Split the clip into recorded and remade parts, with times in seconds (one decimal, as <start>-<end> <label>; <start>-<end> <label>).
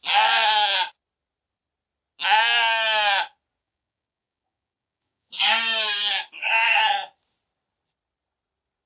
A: 0.0-3.6 recorded; 3.6-6.8 remade; 6.8-8.9 recorded